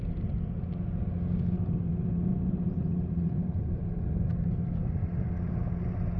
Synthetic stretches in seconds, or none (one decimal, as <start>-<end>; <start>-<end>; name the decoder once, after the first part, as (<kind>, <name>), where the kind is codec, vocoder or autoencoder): 2.3-3.8 (vocoder, BigVGAN v2)